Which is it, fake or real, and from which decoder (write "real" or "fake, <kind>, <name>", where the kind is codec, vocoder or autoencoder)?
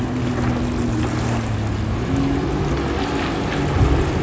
real